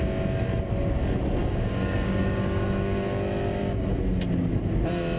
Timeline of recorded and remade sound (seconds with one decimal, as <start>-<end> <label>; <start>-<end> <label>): 0.0-1.4 recorded; 1.4-4.0 remade; 4.0-5.2 recorded